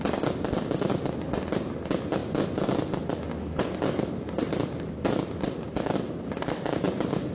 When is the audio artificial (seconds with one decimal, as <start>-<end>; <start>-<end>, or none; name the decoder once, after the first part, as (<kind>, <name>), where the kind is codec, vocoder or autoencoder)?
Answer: none